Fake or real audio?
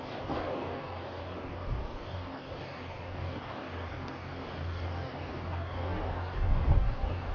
fake